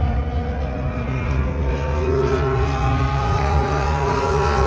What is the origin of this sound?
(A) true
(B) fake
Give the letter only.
B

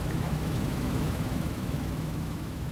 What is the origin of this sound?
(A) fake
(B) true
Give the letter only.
A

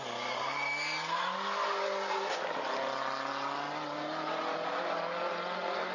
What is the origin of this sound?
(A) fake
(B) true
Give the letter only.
B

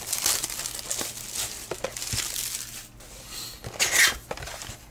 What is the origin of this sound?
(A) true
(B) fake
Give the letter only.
A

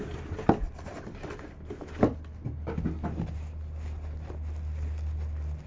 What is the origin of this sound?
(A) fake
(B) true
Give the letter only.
B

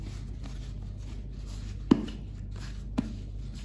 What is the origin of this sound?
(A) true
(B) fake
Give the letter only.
A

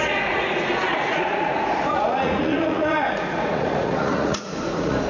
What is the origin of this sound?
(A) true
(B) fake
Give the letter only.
B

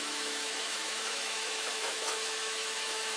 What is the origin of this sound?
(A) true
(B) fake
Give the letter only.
B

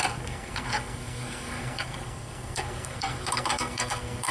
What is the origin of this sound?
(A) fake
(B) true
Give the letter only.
A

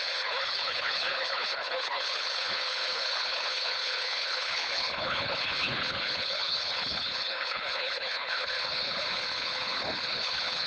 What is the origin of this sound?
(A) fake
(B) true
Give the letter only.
A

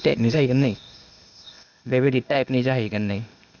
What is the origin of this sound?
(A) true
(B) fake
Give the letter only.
B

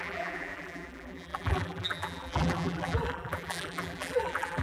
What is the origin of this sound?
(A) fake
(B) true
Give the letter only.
A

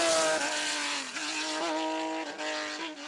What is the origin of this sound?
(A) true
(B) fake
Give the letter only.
A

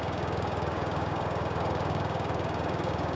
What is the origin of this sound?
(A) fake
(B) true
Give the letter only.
A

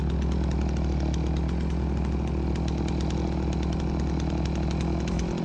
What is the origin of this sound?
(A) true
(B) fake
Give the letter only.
A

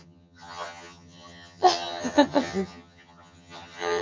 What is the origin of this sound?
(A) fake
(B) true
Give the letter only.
A